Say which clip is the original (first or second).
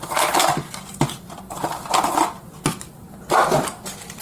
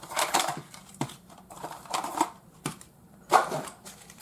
first